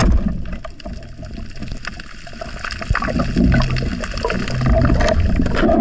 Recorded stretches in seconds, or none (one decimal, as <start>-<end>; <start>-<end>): 0.0-5.8